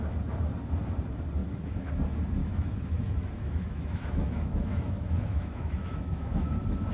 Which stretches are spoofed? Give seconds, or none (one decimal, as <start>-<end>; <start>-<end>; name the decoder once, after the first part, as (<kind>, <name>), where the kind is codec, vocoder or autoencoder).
1.4-1.9 (autoencoder, DAC-VAE); 2.4-6.5